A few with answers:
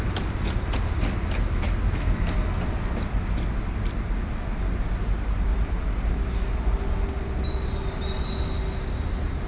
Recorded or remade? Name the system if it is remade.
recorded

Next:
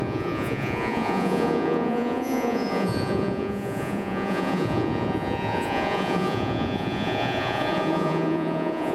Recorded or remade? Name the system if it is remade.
remade, vocoder, Vocos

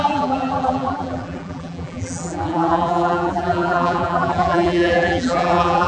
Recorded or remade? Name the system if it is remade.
remade, vocoder, BigVGAN v2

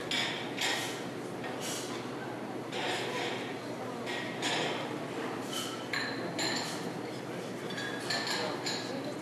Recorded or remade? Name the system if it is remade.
recorded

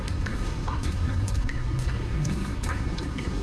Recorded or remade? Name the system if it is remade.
remade, codec, SNAC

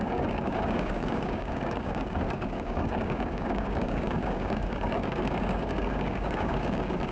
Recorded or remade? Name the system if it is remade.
remade, codec, DAC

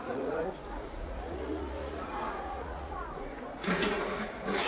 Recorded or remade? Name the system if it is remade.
remade, vocoder, Vocos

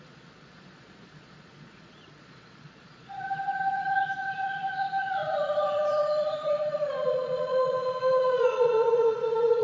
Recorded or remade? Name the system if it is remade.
remade, vocoder, Vocos